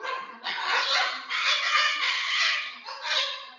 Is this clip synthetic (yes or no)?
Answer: yes